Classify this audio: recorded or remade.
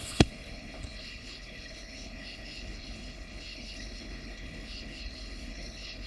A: remade